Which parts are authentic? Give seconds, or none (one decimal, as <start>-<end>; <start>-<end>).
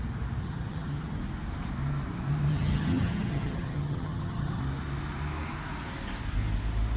0.0-0.4; 1.2-2.5; 4.6-7.0